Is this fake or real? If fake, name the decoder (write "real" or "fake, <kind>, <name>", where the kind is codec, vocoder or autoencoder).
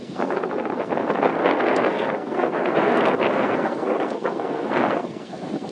fake, codec, SNAC